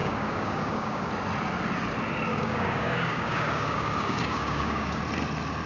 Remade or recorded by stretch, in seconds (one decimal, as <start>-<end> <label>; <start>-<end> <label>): 0.0-1.1 remade; 1.1-2.3 recorded; 2.3-5.0 remade; 5.0-5.7 recorded